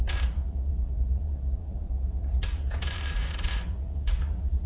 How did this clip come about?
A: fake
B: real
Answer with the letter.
A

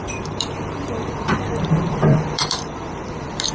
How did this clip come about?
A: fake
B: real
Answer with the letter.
A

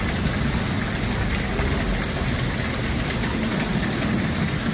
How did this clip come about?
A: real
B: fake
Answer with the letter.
A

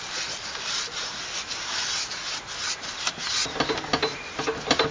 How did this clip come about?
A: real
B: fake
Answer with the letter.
A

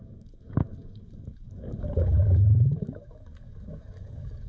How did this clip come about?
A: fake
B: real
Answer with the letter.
A